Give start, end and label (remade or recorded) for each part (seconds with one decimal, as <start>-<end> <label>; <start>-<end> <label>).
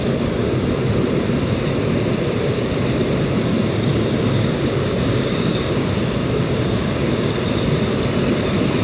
0.0-3.9 recorded; 3.9-7.1 remade; 7.1-8.8 recorded